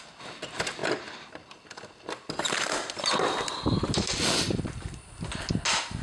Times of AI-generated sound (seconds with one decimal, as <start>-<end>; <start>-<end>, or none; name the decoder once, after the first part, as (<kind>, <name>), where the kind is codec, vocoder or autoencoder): none